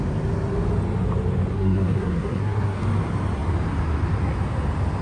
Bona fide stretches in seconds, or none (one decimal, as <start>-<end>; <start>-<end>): 0.0-1.5; 2.8-5.0